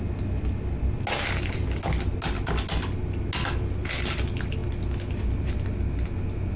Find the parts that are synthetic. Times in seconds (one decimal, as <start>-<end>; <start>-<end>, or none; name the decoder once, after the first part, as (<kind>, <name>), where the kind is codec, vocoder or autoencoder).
none